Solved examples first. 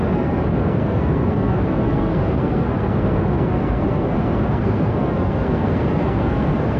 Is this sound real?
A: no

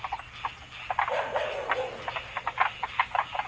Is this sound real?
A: yes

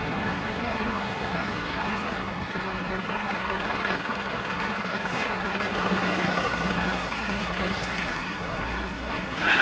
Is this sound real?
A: no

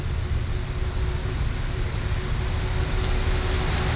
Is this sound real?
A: yes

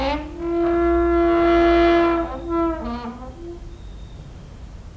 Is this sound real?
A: yes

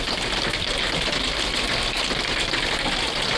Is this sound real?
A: yes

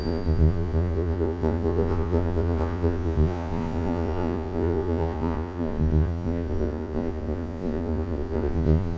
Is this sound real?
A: no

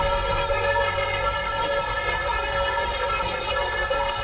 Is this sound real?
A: no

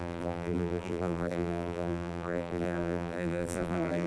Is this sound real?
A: no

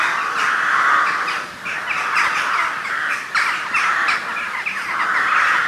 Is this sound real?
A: yes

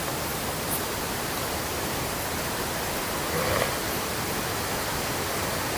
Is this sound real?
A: yes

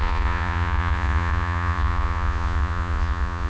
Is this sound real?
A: no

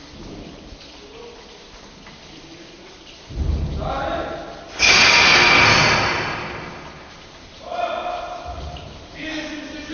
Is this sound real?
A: yes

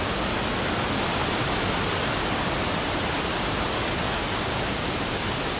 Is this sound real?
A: yes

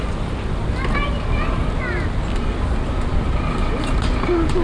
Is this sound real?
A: yes